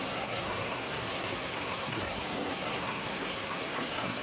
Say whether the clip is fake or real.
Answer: fake